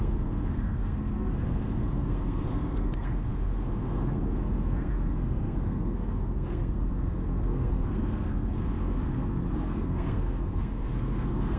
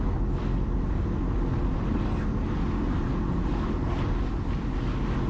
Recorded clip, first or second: second